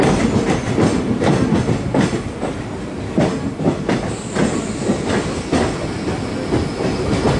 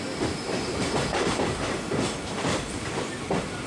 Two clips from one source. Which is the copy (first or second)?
second